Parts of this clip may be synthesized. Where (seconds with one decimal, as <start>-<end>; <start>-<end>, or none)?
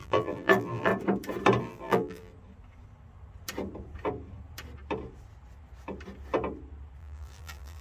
0.0-0.9; 1.6-2.3; 7.0-7.8